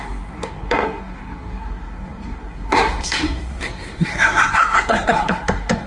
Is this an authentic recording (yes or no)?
no